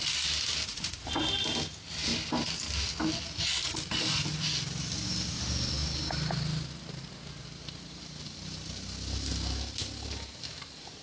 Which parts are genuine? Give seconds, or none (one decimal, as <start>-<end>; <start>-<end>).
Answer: 0.0-0.7; 1.2-11.0